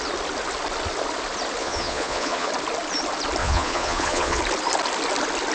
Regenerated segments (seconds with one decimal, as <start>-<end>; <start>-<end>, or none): 1.6-2.5; 3.4-4.4